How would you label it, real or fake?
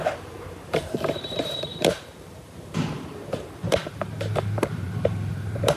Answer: fake